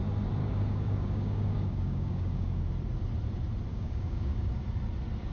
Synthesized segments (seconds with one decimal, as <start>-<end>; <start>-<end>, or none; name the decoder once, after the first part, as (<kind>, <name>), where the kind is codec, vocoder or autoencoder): 0.4-2.6 (codec, DAC); 3.7-4.5